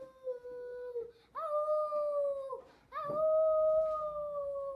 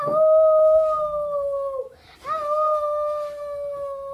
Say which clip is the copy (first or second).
second